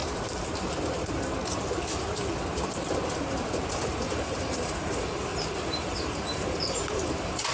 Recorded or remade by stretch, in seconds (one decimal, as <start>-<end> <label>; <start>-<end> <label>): 0.0-4.1 recorded; 4.1-7.5 remade

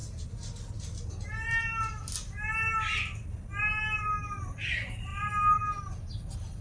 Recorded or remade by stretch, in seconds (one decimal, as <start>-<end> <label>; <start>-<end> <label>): 0.0-6.6 recorded